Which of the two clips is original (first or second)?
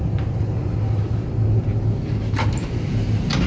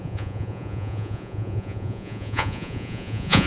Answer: first